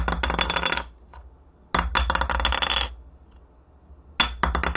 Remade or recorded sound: recorded